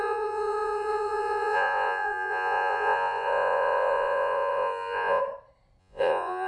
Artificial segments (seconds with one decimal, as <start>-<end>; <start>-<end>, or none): 0.0-5.2; 5.8-6.5